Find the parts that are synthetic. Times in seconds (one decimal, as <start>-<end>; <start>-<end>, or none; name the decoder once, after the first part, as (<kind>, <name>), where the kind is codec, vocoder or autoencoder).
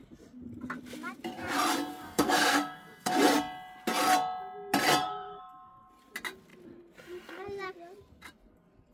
1.9-3.1 (codec, SNAC); 5.0-5.9